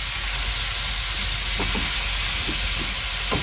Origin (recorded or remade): recorded